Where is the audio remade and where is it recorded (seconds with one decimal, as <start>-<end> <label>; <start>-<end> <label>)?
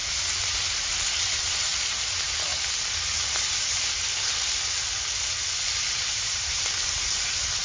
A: 0.0-2.5 remade; 2.5-6.0 recorded; 6.0-7.6 remade